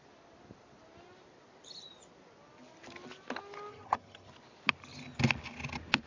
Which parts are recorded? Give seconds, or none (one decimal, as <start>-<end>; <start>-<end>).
0.0-3.7; 4.3-6.1